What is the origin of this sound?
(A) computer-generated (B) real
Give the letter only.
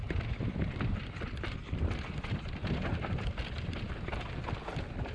A